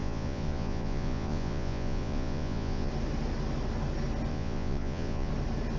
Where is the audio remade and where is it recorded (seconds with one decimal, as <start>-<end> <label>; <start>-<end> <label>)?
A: 0.0-2.9 remade; 2.9-4.3 recorded; 4.3-5.3 remade; 5.3-5.8 recorded